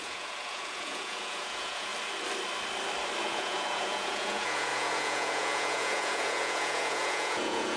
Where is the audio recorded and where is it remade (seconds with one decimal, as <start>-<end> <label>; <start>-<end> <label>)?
0.0-1.9 remade; 1.9-3.2 recorded; 3.2-7.8 remade